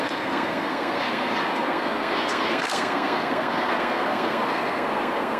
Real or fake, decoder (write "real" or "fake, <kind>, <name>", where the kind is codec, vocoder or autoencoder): fake, codec, SNAC